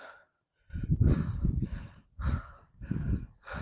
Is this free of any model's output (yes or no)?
yes